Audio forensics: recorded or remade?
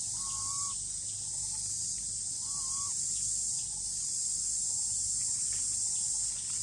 recorded